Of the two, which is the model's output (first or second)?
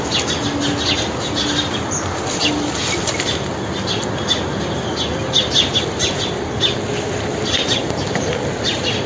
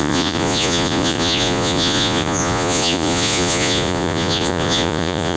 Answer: second